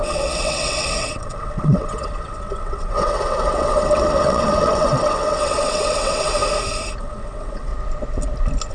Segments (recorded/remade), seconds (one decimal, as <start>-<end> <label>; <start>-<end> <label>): 0.0-6.4 remade; 6.4-7.0 recorded; 7.0-7.7 remade; 7.7-8.7 recorded